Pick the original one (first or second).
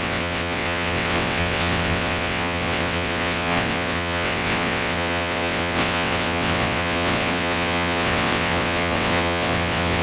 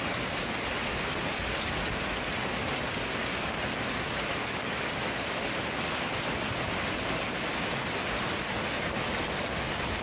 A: second